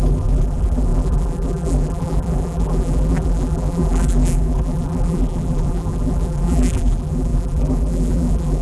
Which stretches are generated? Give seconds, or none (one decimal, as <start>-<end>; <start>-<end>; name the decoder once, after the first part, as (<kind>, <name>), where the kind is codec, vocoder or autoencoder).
0.0-8.6 (vocoder, BigVGAN v2)